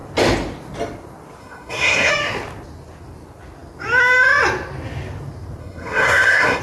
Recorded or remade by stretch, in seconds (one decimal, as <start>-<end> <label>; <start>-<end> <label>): 0.0-1.4 recorded; 1.4-2.1 remade; 2.1-5.6 recorded; 5.6-6.6 remade